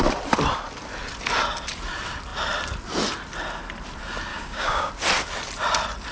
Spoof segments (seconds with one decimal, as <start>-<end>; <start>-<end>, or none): 4.3-4.9